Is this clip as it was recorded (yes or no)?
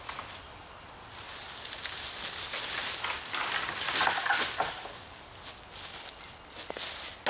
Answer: yes